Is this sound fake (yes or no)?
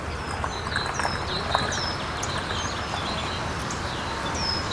no